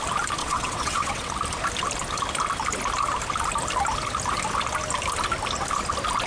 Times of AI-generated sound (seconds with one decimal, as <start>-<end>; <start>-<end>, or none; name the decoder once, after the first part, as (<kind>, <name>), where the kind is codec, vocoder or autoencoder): 0.4-1.3 (vocoder, WaveNeXt)